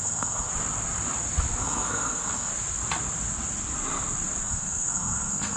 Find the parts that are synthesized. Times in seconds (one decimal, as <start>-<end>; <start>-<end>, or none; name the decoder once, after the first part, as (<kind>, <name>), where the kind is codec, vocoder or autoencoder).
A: 0.0-0.5 (codec, SNAC); 1.6-2.5; 4.4-5.6